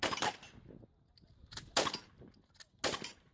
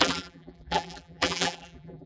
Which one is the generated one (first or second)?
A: second